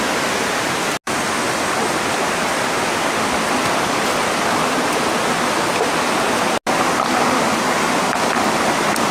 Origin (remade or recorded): recorded